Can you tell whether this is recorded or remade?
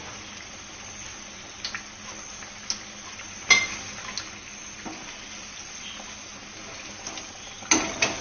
recorded